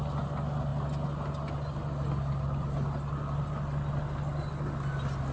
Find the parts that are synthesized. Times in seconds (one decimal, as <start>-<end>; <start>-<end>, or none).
none